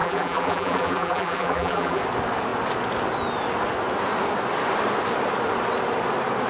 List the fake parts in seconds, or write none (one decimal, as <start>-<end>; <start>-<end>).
0.0-2.0